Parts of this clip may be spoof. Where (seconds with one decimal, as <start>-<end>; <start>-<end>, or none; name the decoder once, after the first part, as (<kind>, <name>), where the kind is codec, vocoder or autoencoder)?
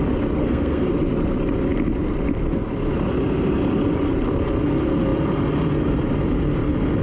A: 0.4-0.9 (codec, SNAC)